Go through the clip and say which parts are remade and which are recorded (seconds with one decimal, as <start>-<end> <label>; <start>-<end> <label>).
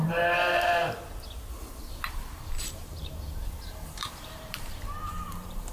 0.0-0.8 remade; 0.8-1.9 recorded; 1.9-5.7 remade